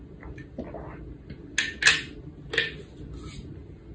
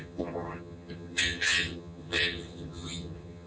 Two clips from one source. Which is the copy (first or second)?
second